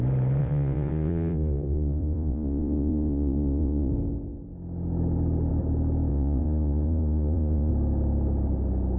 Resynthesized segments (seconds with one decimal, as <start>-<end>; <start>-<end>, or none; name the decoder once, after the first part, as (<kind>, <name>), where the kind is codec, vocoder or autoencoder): 0.4-3.9 (vocoder, Vocos); 6.1-7.7